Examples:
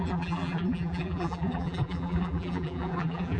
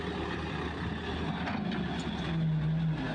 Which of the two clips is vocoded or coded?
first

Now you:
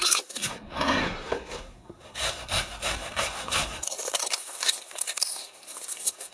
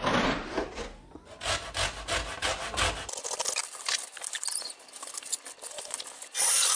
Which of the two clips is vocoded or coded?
first